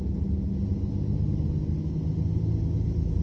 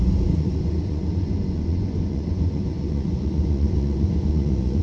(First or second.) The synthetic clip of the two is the second